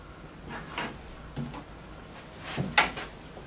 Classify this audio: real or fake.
real